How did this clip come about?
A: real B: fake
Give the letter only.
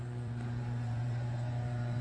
B